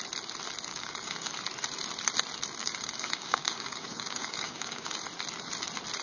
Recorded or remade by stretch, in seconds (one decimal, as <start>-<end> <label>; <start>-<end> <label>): 0.0-0.7 recorded; 0.7-1.3 remade; 1.3-2.6 recorded; 2.6-4.9 remade; 4.9-6.0 recorded